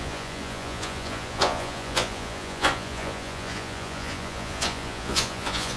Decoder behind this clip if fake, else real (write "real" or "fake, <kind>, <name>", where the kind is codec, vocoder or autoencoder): fake, vocoder, Vocos